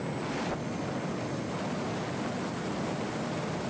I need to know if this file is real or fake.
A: real